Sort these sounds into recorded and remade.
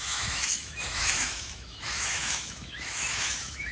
remade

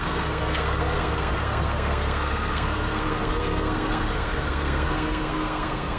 remade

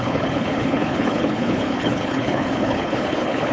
remade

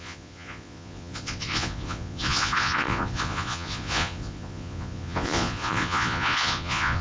remade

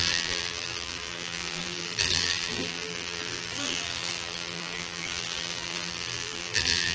remade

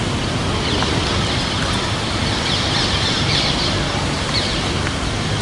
recorded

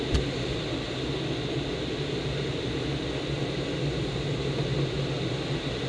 recorded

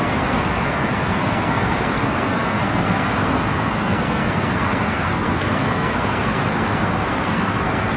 remade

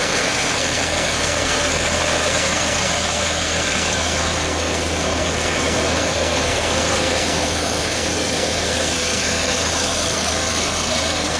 remade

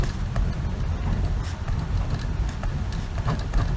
recorded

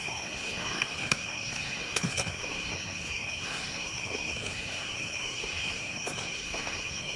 remade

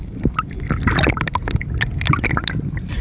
recorded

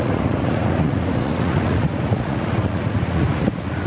remade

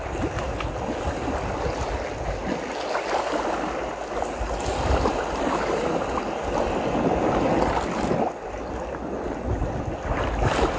recorded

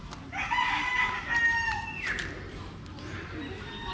recorded